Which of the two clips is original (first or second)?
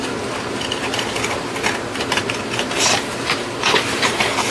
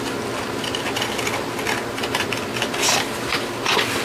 second